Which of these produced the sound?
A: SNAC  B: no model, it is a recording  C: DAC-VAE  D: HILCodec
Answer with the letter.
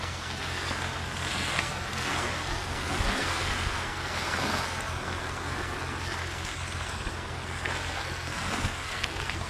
A